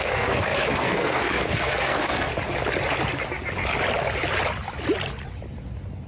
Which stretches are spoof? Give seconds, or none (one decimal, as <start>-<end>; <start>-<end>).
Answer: 0.0-2.3